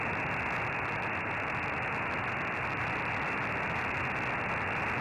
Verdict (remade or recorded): recorded